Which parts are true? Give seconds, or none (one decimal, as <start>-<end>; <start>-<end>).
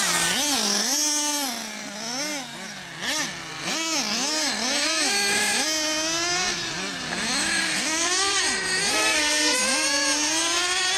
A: 0.0-7.6; 8.4-8.9; 9.6-11.0